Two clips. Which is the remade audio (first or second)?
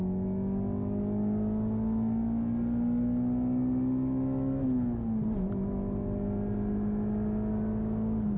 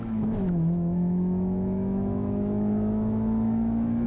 second